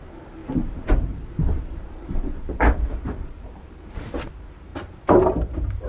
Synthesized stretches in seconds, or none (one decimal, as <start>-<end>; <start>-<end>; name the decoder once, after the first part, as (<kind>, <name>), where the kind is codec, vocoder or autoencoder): 0.4-3.9 (vocoder, BigVGAN v2); 4.7-5.9